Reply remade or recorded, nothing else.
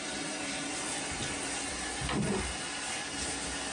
recorded